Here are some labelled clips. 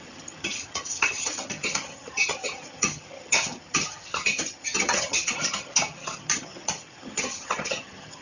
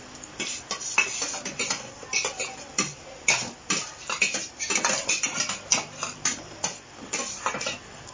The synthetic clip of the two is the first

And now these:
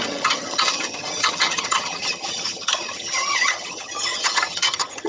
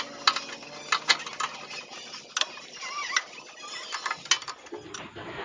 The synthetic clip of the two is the first